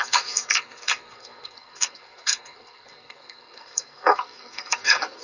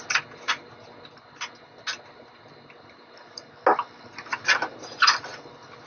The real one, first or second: second